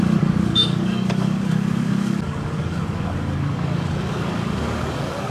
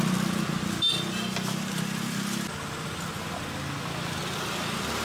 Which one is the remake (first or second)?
first